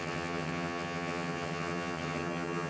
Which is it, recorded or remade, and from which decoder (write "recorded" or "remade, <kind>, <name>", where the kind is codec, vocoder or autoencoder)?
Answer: remade, vocoder, HiFi-GAN